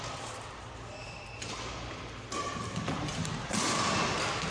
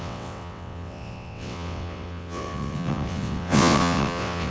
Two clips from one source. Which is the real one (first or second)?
first